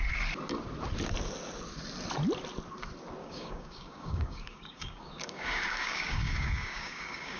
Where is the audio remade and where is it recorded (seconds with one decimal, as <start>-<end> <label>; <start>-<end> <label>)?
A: 0.0-3.2 recorded; 3.2-7.4 remade